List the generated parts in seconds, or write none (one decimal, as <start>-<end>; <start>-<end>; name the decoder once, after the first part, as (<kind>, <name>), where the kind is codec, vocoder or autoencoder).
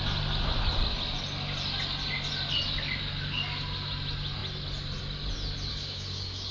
5.7-6.5 (codec, DAC)